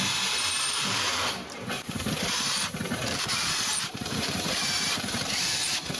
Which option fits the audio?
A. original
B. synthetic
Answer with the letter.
B